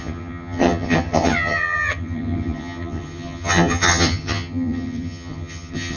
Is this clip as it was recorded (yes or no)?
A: no